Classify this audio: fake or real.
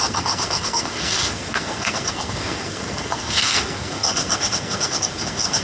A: fake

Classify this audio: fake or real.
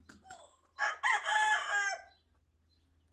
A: real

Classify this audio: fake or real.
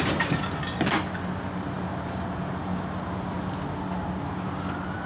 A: real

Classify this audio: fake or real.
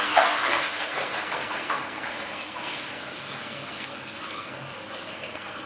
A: fake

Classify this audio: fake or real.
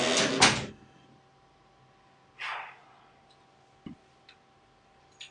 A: real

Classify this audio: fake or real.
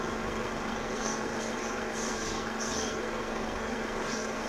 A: fake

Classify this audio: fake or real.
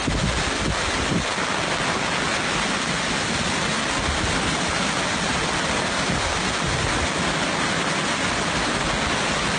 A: real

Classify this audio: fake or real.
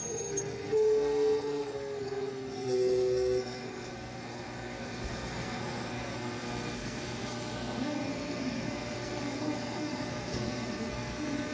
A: fake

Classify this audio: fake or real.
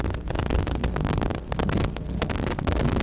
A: fake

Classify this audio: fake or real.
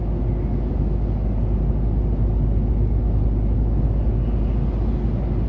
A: real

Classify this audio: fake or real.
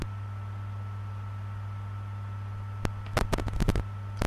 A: real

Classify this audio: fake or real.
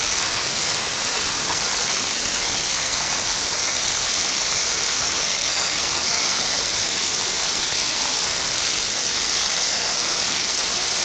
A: fake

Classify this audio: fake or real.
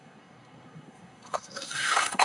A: fake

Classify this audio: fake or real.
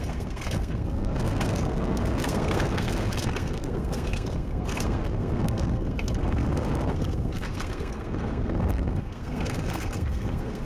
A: fake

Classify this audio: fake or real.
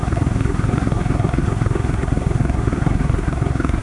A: fake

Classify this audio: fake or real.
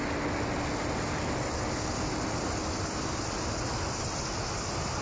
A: real